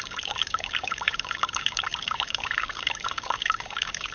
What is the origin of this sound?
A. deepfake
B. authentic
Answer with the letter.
A